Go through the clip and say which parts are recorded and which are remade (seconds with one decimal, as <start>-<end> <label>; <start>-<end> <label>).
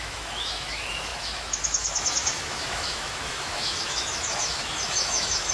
0.0-5.5 remade